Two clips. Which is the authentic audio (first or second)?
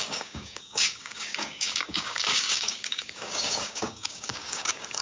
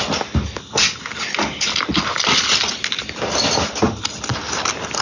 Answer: second